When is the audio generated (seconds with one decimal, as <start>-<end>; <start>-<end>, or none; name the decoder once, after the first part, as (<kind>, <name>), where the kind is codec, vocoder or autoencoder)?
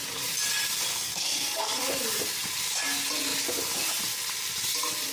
0.9-1.8 (codec, SNAC)